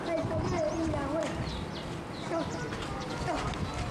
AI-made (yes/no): no